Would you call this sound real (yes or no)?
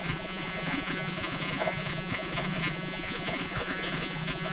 no